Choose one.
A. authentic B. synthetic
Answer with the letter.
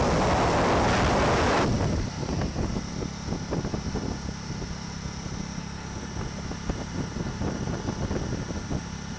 A